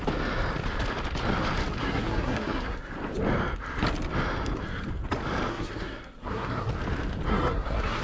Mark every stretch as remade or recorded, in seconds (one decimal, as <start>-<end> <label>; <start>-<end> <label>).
0.0-1.8 recorded; 1.8-2.9 remade; 2.9-5.5 recorded; 5.5-6.7 remade; 6.7-7.3 recorded; 7.3-8.0 remade